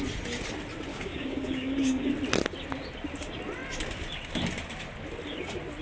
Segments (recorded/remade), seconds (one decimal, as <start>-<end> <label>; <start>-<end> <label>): 0.0-0.9 recorded; 0.9-2.1 remade; 2.1-5.8 recorded